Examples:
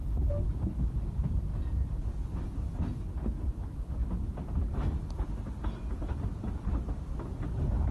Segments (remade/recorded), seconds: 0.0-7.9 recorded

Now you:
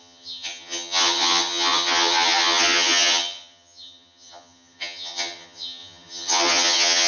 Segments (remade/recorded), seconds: 0.0-7.1 remade

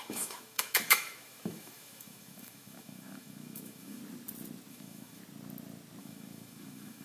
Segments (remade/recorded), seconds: 0.0-4.0 remade; 4.0-4.7 recorded; 4.7-5.2 remade; 5.2-6.0 recorded; 6.0-7.0 remade

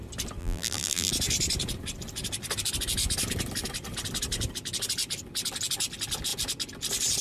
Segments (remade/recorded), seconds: 0.0-0.4 recorded; 0.4-1.1 remade; 1.1-7.2 recorded

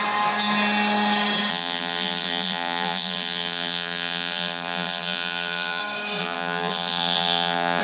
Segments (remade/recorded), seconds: 0.0-1.5 recorded; 1.5-5.8 remade; 5.8-6.2 recorded; 6.2-7.8 remade

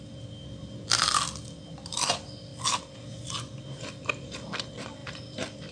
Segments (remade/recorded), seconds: 0.0-2.5 remade; 2.5-3.6 recorded; 3.6-5.7 remade